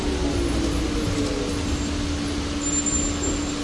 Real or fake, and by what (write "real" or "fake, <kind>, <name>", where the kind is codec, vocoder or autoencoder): real